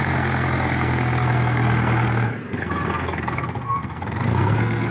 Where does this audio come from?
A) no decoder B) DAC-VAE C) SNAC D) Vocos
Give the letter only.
C